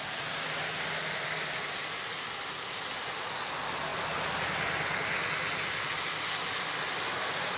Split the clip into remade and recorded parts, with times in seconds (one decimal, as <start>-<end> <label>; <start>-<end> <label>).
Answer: 0.0-7.6 recorded